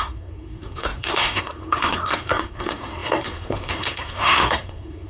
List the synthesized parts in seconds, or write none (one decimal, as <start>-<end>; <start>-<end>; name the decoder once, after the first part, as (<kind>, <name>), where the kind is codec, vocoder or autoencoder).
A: 0.0-5.1 (codec, SNAC)